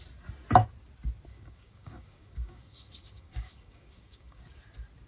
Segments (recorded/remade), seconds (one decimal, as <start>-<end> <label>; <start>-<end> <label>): 0.0-1.3 recorded; 1.3-4.4 remade; 4.4-5.1 recorded